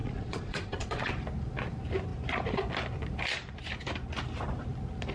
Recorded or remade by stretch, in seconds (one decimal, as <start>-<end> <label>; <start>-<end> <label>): 0.0-1.1 remade; 1.1-5.1 recorded